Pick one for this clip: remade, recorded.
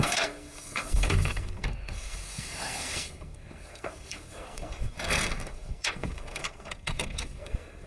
remade